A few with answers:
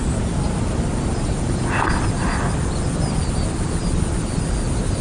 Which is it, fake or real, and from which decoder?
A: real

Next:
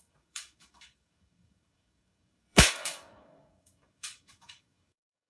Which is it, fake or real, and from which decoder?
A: fake, codec, DAC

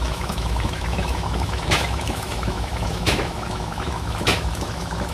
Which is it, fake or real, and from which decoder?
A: fake, autoencoder, DAC-VAE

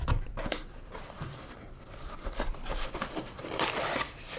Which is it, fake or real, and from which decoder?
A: fake, vocoder, BigVGAN v2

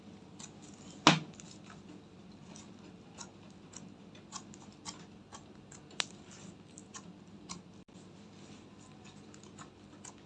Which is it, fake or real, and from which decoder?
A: real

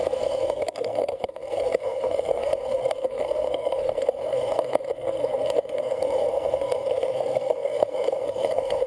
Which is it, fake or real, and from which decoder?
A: fake, codec, SNAC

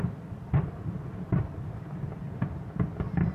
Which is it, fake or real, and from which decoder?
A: fake, vocoder, BigVGAN v2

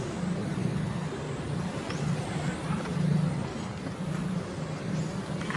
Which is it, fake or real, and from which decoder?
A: real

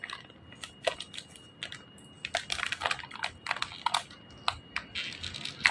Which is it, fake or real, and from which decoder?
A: real